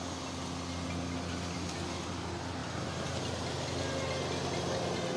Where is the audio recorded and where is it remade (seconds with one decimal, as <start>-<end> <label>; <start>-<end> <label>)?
0.0-5.2 recorded